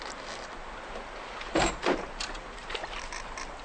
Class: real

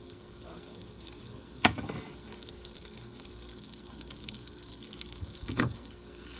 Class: fake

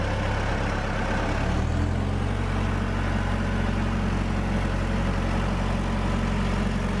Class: real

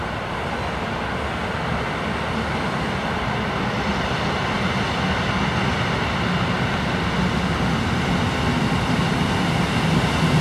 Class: real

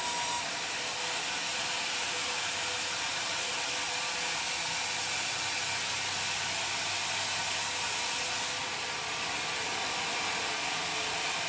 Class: real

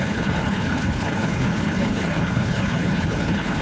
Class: fake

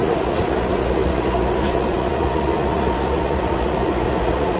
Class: fake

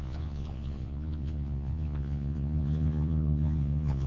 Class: fake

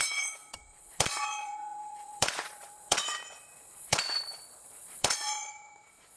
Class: fake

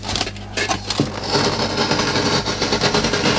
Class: real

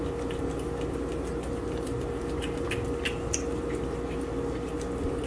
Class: real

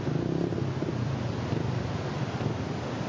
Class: real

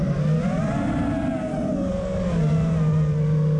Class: real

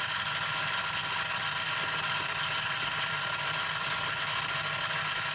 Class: real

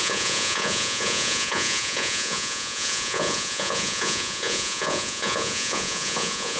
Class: fake